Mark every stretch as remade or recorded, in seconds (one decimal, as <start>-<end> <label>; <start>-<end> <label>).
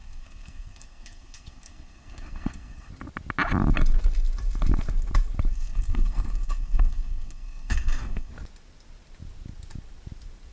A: 0.0-2.9 remade; 2.9-5.5 recorded; 5.5-8.3 remade; 8.3-10.5 recorded